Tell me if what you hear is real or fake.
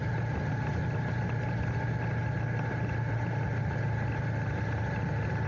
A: real